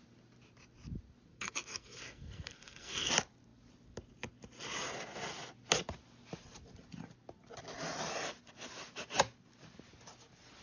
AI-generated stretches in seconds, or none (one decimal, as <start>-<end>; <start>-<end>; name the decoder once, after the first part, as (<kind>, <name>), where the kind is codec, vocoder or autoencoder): 1.3-3.1 (codec, SNAC)